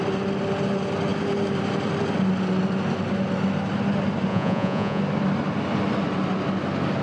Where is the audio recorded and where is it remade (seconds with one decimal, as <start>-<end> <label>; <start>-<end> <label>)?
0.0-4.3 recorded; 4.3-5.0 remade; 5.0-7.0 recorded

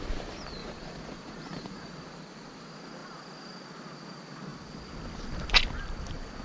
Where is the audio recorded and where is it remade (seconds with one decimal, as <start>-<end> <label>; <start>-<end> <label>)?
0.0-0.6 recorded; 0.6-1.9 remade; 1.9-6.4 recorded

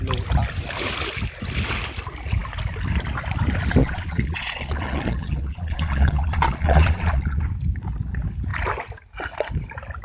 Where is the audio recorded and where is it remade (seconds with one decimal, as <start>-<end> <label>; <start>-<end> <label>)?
0.0-3.8 recorded; 3.8-7.4 remade; 7.4-10.0 recorded

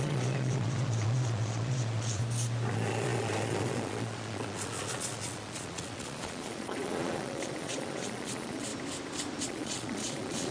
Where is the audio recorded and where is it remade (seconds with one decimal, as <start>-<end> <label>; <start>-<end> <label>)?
0.0-2.2 remade; 2.2-2.7 recorded; 2.7-8.7 remade; 8.7-9.4 recorded; 9.4-10.5 remade

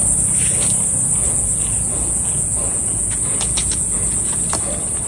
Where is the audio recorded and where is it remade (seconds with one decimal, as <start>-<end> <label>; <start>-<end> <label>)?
0.0-1.2 recorded; 1.2-4.3 remade; 4.3-5.1 recorded